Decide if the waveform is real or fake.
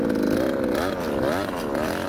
real